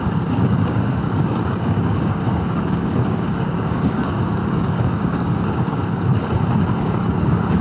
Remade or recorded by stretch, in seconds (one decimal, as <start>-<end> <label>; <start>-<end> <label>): 0.0-5.8 remade; 5.8-6.8 recorded; 6.8-7.6 remade